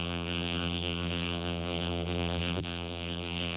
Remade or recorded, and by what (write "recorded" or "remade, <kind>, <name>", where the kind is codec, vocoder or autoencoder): remade, vocoder, BigVGAN v2